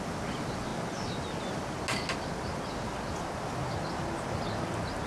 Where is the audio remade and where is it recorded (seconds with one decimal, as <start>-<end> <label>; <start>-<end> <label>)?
0.0-5.1 recorded